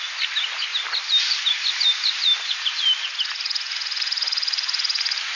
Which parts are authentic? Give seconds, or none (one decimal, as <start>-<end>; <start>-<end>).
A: 0.0-0.7; 2.8-5.4